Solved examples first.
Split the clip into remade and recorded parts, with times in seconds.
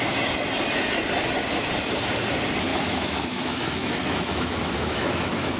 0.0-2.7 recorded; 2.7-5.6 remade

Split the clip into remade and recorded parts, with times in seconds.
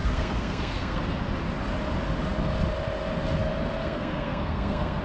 0.0-1.0 remade; 1.0-3.8 recorded; 3.8-5.0 remade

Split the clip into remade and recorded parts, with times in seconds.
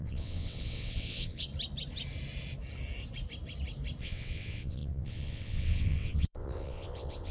0.0-1.5 remade; 1.5-4.0 recorded; 4.0-7.3 remade